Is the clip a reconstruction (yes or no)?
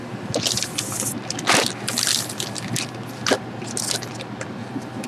no